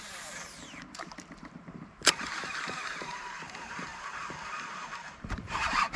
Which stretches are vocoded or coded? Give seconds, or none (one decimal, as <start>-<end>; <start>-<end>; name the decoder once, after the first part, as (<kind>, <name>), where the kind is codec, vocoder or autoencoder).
0.0-6.0 (vocoder, BigVGAN v2)